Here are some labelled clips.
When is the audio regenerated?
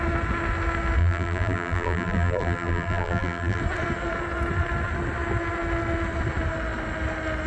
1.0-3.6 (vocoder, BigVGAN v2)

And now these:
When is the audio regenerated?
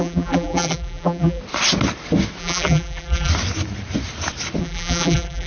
0.0-1.4 (vocoder, BigVGAN v2); 2.4-3.3; 4.6-5.5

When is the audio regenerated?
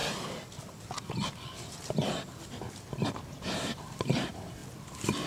3.2-4.6 (vocoder, BigVGAN v2)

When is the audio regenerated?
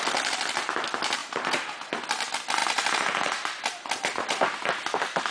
1.2-2.0 (vocoder, BigVGAN v2); 2.6-4.4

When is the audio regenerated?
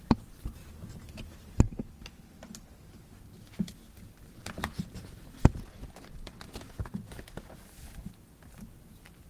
none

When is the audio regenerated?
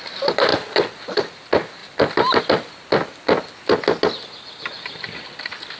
0.5-1.3 (vocoder, BigVGAN v2)